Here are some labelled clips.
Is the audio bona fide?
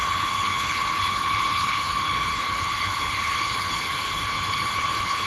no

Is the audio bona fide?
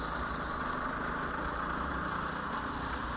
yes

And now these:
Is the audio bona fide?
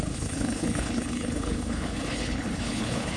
no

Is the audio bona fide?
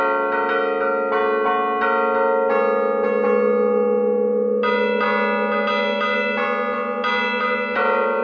yes